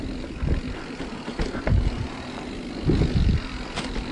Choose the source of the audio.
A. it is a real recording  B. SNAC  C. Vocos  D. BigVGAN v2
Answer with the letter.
A